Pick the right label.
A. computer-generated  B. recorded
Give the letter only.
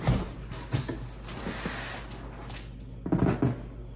B